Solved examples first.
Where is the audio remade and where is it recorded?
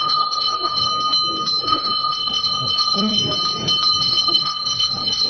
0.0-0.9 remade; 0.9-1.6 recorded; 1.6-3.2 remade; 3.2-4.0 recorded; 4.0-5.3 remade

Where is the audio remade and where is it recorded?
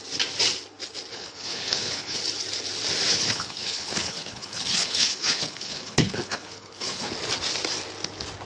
0.0-1.1 recorded; 1.1-2.2 remade; 2.2-3.1 recorded; 3.1-7.1 remade; 7.1-8.4 recorded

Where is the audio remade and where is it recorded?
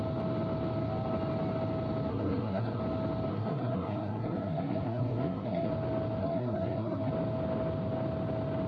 0.0-2.1 recorded; 2.1-2.8 remade; 2.8-3.3 recorded; 3.3-5.7 remade; 5.7-6.2 recorded; 6.2-7.1 remade; 7.1-8.7 recorded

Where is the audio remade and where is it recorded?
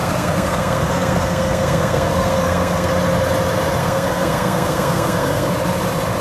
0.0-2.9 remade; 2.9-3.8 recorded; 3.8-5.5 remade; 5.5-6.2 recorded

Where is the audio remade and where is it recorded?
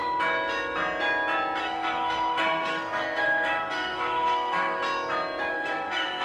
0.0-1.6 recorded; 1.6-4.8 remade; 4.8-5.5 recorded; 5.5-6.2 remade